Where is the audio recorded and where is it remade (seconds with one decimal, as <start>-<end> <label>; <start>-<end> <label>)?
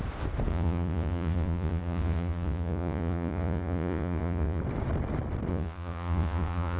0.0-0.5 recorded; 0.5-4.6 remade; 4.6-5.5 recorded; 5.5-6.8 remade